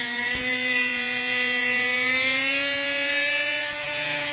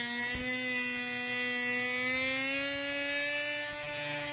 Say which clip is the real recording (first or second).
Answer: second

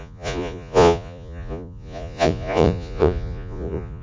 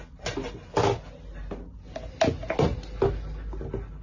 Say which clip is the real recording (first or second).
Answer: second